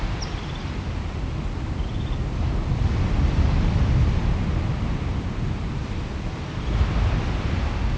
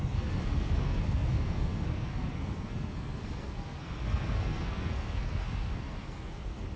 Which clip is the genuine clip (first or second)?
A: first